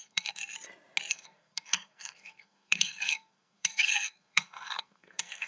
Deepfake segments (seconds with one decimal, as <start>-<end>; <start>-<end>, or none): 0.0-0.4; 1.1-5.5